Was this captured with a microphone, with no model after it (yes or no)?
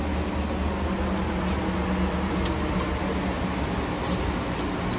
yes